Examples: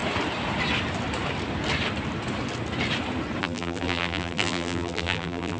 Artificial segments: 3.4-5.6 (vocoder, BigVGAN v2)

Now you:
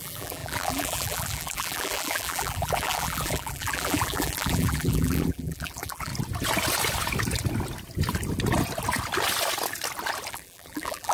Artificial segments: 0.0-6.1 (vocoder, BigVGAN v2); 10.3-11.1